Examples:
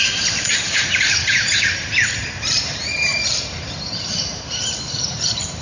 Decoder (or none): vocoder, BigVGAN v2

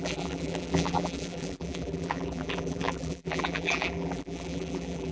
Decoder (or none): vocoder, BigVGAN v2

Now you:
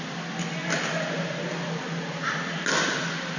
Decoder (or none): none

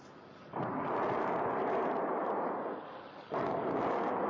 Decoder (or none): none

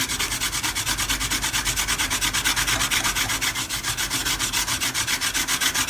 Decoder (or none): none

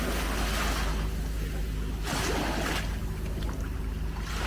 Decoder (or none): none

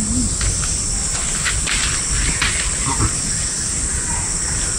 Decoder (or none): none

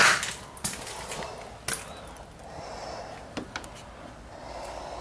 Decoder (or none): none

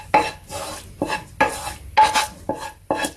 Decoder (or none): none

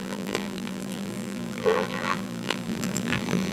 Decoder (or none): vocoder, BigVGAN v2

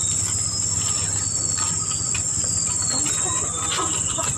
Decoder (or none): none